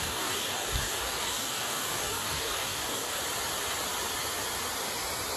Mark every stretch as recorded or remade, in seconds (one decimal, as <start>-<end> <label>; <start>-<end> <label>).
0.0-3.2 remade; 3.2-5.4 recorded